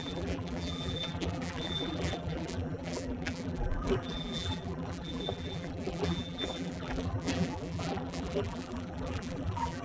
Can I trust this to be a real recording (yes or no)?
no